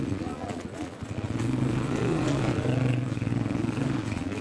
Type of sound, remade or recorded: remade